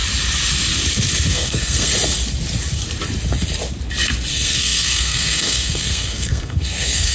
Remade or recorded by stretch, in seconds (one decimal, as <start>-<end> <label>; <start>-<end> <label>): 0.0-1.3 recorded; 1.3-1.9 remade; 1.9-4.3 recorded; 4.3-7.1 remade

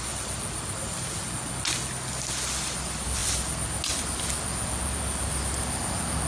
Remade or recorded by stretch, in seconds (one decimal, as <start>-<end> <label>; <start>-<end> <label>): 0.0-6.3 recorded

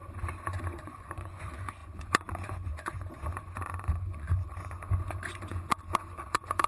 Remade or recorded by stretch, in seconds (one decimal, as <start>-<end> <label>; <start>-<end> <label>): 0.0-6.7 remade

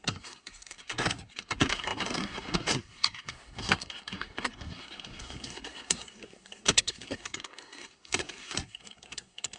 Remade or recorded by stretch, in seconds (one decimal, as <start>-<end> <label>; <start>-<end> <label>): 0.0-9.6 remade

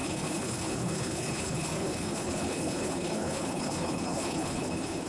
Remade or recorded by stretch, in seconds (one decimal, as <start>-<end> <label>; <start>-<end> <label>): 0.0-5.1 remade

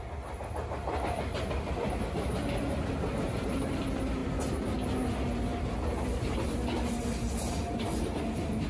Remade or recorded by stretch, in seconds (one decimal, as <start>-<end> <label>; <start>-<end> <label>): 0.0-8.7 recorded